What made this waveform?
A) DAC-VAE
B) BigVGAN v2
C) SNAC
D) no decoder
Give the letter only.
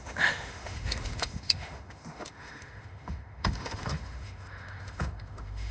A